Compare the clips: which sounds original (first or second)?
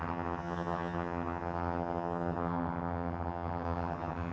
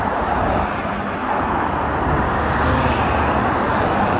second